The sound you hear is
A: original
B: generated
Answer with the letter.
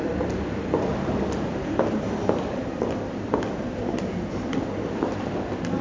B